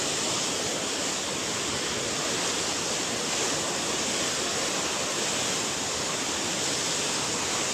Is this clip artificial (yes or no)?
no